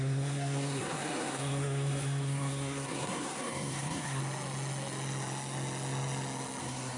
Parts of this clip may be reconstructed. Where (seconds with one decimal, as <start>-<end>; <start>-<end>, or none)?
0.0-4.2; 6.6-7.0